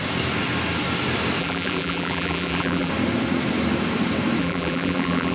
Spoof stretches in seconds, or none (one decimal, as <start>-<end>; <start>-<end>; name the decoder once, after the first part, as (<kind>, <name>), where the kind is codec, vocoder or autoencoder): 1.4-2.9 (vocoder, BigVGAN v2); 4.4-5.3